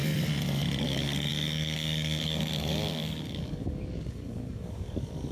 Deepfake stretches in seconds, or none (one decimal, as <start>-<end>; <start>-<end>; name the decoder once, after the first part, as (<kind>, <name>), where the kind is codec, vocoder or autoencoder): 0.8-5.3 (codec, DAC)